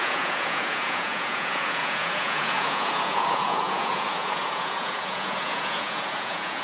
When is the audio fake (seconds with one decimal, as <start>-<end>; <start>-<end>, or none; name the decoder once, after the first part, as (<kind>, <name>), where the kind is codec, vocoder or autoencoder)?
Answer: 0.0-6.6 (vocoder, Vocos)